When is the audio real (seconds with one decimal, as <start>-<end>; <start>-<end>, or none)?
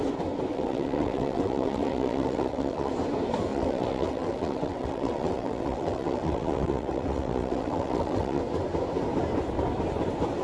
0.0-0.5; 2.9-3.5; 8.4-10.4